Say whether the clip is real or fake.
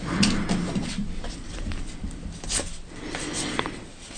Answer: real